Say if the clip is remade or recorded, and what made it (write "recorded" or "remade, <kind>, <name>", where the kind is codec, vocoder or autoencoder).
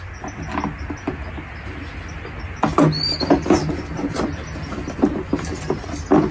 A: recorded